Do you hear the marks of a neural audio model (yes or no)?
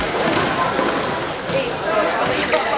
no